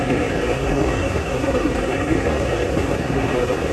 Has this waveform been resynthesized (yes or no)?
yes